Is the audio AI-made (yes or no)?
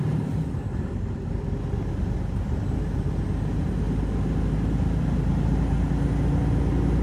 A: no